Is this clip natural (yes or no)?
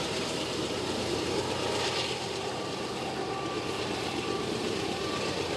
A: no